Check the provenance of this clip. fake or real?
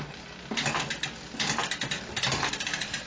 real